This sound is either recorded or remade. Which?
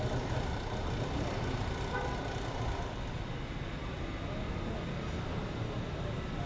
recorded